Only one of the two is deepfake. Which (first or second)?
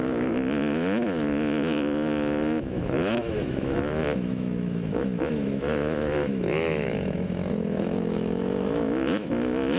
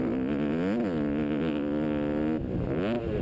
first